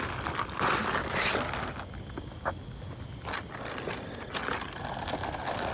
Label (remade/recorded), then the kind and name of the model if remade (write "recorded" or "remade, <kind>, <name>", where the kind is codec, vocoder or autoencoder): recorded